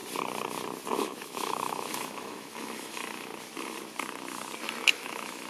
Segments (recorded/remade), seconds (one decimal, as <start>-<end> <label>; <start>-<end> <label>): 0.0-1.0 recorded; 1.0-3.3 remade; 3.3-4.8 recorded; 4.8-5.5 remade